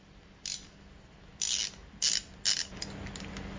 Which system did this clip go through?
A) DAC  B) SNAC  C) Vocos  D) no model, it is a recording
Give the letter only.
D